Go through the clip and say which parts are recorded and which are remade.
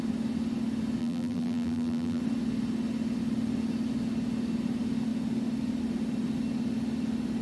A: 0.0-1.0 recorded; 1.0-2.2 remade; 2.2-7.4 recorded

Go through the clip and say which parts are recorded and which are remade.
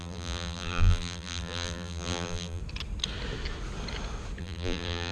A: 0.0-2.6 remade; 2.6-4.4 recorded; 4.4-5.1 remade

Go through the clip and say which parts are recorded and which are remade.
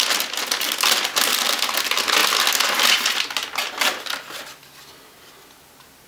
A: 0.0-6.1 recorded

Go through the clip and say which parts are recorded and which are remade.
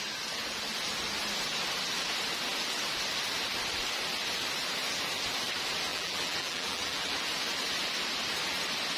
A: 0.0-5.9 recorded; 5.9-7.1 remade; 7.1-9.0 recorded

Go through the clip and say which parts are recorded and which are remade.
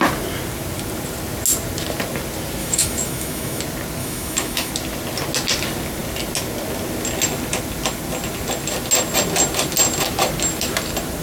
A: 0.0-2.6 recorded; 2.6-3.6 remade; 3.6-4.0 recorded; 4.0-4.7 remade; 4.7-11.2 recorded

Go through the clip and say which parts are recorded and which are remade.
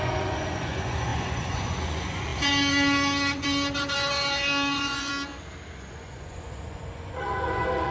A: 0.0-5.1 remade; 5.1-5.8 recorded; 5.8-7.9 remade